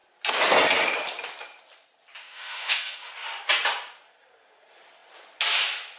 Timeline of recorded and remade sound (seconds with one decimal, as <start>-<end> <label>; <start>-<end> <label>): 0.0-2.2 recorded; 2.2-3.1 remade; 3.1-6.0 recorded